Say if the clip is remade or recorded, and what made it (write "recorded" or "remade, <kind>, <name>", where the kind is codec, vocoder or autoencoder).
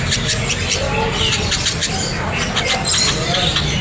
recorded